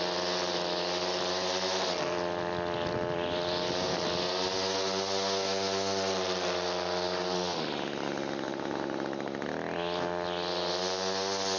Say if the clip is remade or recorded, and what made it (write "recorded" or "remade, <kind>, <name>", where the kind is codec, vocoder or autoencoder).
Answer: recorded